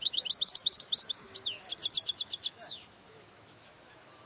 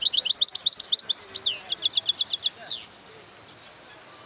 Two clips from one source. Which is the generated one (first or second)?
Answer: first